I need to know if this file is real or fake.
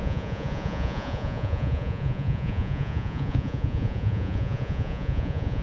fake